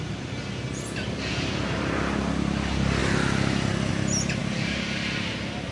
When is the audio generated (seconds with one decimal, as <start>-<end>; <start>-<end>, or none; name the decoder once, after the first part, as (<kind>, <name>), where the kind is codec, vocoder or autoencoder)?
none